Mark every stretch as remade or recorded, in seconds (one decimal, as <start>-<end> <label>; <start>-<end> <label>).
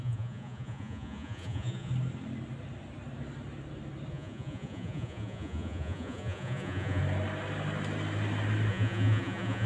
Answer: 0.0-1.9 remade; 1.9-4.1 recorded; 4.1-7.0 remade; 7.0-8.7 recorded; 8.7-9.7 remade